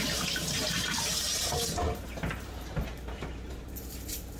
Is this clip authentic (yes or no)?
no